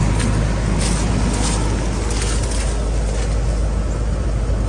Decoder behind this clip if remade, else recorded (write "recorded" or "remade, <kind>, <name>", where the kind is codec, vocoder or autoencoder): recorded